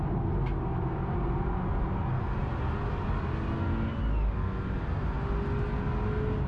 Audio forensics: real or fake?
real